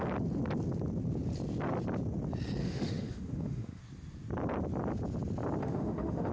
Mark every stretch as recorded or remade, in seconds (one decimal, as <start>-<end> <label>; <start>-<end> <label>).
0.0-2.6 recorded; 2.6-3.8 remade; 3.8-5.6 recorded; 5.6-6.3 remade